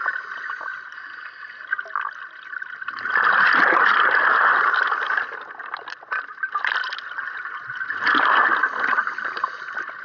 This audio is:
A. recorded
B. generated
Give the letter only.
A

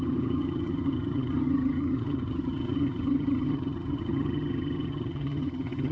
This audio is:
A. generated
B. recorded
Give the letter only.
A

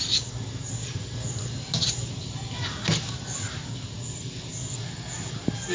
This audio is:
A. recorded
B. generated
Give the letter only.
A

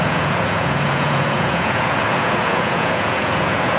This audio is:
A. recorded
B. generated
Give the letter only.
B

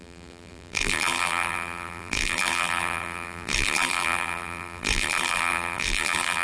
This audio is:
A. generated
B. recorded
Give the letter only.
A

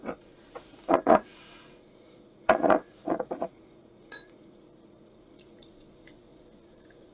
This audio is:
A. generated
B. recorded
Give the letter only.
A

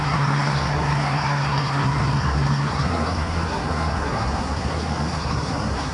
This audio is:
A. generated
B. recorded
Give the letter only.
A